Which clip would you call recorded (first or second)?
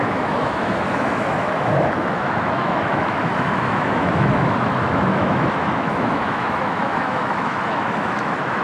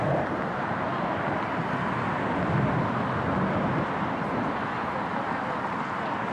second